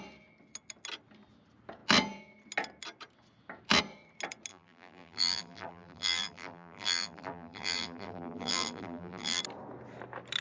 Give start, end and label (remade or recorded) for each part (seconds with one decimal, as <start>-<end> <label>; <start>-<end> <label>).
0.0-4.5 recorded; 4.5-9.4 remade; 9.4-10.4 recorded